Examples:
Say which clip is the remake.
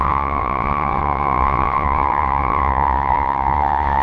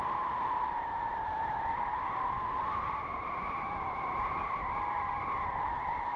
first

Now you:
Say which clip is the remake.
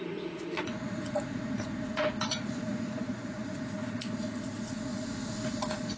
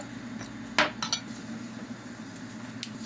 first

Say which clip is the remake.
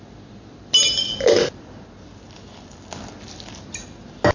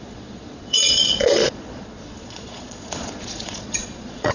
second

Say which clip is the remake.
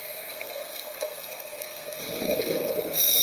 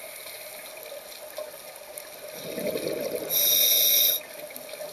first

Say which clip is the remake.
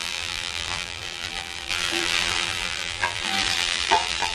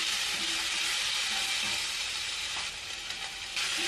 first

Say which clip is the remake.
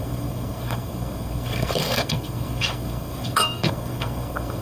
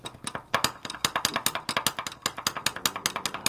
first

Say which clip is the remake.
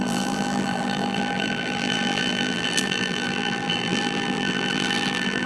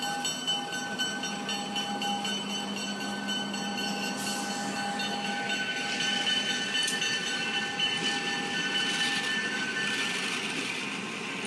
first